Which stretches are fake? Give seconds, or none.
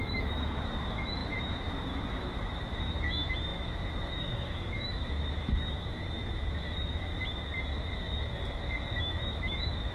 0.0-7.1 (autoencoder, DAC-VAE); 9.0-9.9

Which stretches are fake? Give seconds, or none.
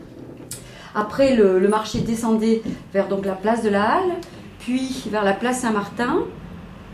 none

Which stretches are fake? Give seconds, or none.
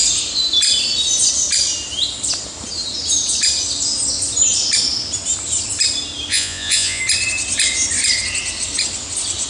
6.3-7.0 (vocoder, Vocos)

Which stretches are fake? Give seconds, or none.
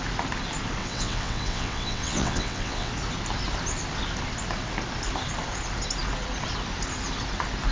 0.8-2.9 (vocoder, WaveNeXt)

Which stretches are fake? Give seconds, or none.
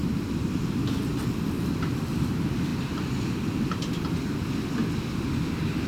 none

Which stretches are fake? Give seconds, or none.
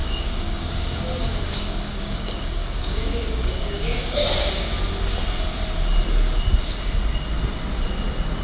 0.0-4.8 (codec, DAC)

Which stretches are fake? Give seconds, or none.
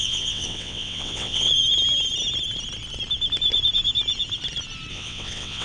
0.0-1.5 (vocoder, WaveNeXt); 4.9-5.6